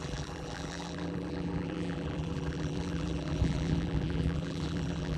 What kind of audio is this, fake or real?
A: fake